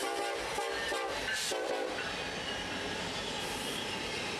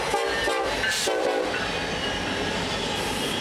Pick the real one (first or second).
second